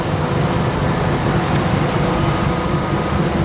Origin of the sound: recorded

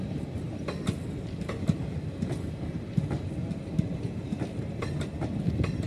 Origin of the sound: recorded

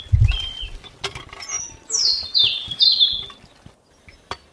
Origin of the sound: recorded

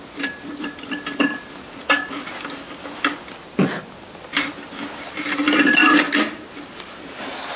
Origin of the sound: recorded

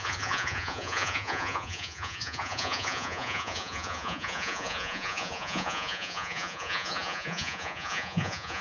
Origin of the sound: remade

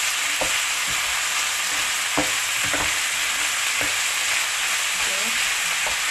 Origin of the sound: recorded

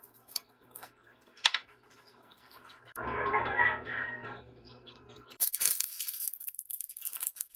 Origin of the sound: remade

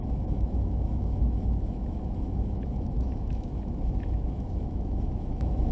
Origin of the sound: remade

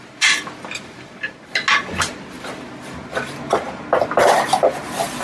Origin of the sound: recorded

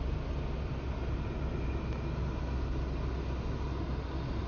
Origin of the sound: recorded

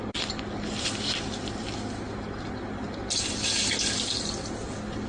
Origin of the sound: recorded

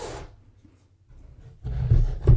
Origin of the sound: recorded